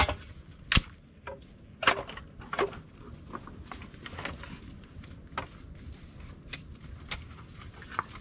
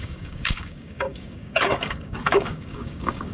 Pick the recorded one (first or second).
first